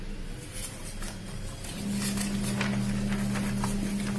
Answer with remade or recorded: recorded